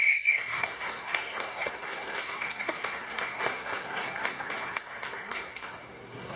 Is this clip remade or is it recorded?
remade